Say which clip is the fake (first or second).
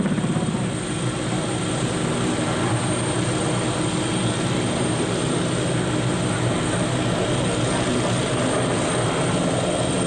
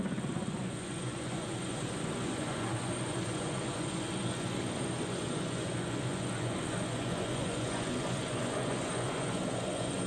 second